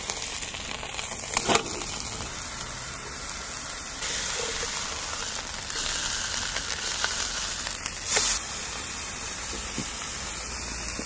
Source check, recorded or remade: recorded